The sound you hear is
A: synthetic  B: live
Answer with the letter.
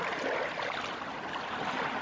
B